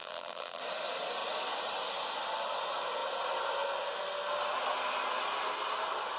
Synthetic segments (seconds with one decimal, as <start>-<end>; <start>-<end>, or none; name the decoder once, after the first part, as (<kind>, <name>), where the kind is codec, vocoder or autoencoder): 0.0-0.6 (vocoder, BigVGAN v2)